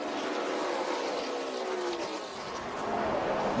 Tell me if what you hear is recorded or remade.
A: recorded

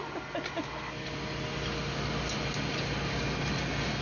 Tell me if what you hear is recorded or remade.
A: recorded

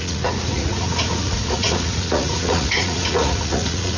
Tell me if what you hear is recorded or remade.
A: remade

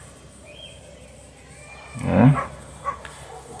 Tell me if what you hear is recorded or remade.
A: recorded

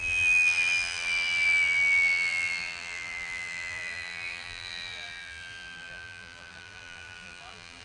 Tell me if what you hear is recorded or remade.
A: remade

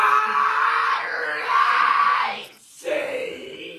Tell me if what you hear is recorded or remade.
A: recorded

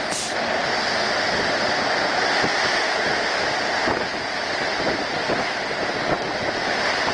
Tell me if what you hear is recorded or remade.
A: recorded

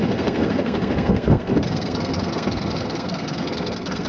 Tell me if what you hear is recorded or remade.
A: remade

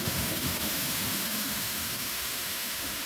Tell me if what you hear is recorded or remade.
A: remade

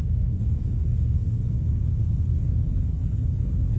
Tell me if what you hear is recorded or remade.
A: remade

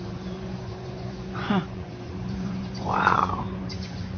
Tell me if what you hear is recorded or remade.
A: remade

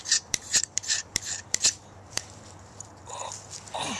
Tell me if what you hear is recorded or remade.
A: remade